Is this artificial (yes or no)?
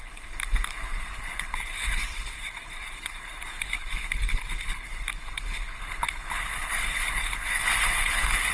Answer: yes